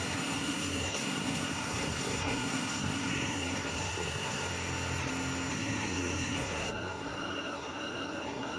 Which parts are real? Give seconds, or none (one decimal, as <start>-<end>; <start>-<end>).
4.5-5.5